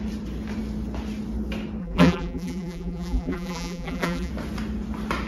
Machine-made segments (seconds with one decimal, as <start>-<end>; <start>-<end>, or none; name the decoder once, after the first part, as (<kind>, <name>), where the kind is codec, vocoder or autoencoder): 1.8-4.3 (vocoder, BigVGAN v2)